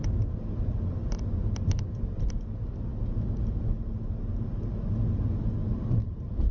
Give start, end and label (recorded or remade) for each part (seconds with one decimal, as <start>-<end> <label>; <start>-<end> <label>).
0.0-1.0 recorded; 1.0-2.3 remade; 2.3-5.7 recorded; 5.7-6.5 remade